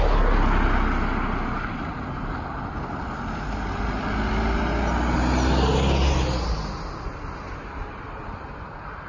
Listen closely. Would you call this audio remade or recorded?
recorded